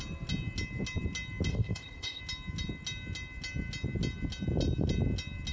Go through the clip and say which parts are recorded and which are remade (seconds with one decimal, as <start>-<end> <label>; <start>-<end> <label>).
0.0-1.5 recorded; 1.5-2.2 remade; 2.2-5.5 recorded